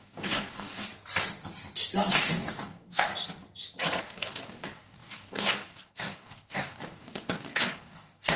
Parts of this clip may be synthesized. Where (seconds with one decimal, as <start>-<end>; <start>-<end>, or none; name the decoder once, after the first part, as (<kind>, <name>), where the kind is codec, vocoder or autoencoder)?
0.0-0.9 (codec, DAC); 2.1-3.1; 4.0-8.4